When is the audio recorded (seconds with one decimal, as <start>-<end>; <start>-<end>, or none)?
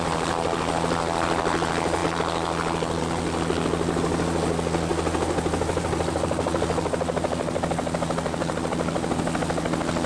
0.0-10.1